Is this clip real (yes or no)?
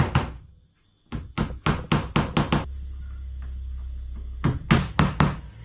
yes